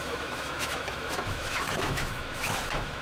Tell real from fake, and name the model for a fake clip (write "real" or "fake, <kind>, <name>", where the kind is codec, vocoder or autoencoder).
fake, autoencoder, DAC-VAE